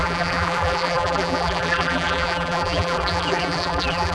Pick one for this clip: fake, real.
fake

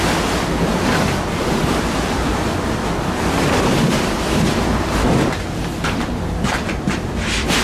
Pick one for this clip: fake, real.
fake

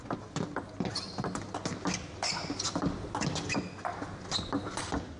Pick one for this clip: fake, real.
real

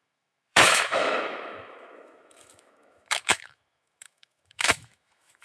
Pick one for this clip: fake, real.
fake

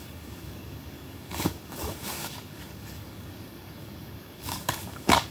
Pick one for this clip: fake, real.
fake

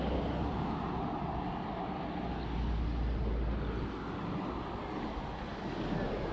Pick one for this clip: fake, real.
real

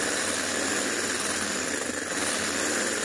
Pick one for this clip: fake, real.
real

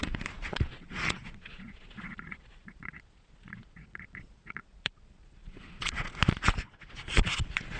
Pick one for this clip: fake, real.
fake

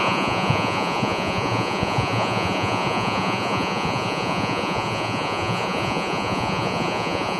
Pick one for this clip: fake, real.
fake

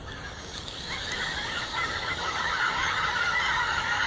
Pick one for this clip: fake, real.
fake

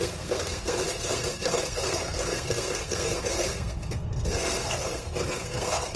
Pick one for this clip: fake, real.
fake